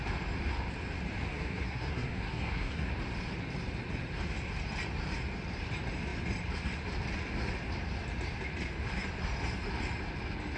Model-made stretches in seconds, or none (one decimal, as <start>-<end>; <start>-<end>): 1.3-2.9